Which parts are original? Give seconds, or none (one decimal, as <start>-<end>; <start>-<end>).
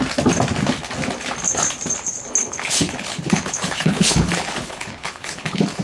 0.0-2.4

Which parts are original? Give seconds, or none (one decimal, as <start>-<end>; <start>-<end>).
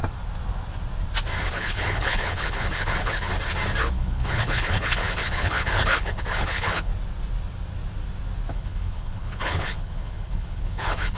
0.0-1.5; 3.3-3.8; 6.9-8.5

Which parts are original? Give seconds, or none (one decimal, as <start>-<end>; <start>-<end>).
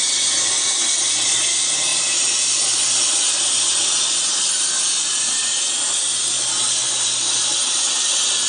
0.0-8.5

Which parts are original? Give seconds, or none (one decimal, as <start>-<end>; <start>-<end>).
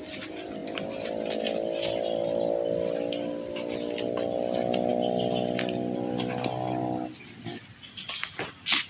0.0-8.9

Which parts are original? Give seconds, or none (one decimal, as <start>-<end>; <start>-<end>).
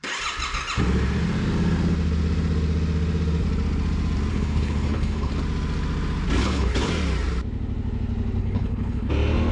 0.0-4.3; 5.3-6.4; 6.9-8.4; 9.1-9.5